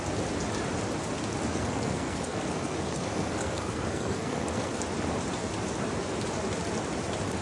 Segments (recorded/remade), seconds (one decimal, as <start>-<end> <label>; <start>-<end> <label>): 0.0-1.5 recorded; 1.5-4.8 remade; 4.8-7.4 recorded